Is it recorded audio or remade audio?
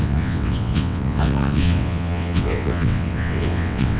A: remade